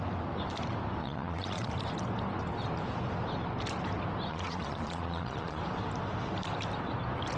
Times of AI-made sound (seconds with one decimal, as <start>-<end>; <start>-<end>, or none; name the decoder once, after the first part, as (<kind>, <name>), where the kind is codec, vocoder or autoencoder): 1.0-1.7 (vocoder, Vocos); 4.3-5.6